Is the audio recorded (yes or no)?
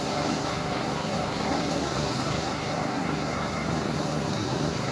no